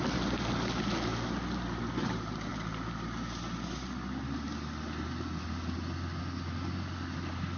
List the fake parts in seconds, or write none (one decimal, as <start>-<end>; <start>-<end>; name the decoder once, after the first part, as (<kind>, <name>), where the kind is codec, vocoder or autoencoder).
none